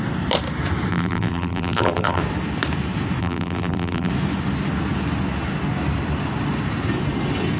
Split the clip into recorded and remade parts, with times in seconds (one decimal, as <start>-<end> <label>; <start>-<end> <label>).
0.0-0.9 recorded; 0.9-2.2 remade; 2.2-3.2 recorded; 3.2-4.1 remade; 4.1-7.6 recorded